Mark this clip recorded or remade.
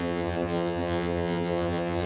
remade